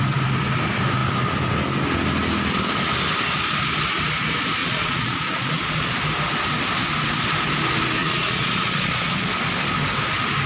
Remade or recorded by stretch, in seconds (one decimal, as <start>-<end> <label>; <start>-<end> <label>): 0.0-4.6 recorded; 4.6-5.9 remade; 5.9-8.0 recorded; 8.0-9.3 remade; 9.3-10.5 recorded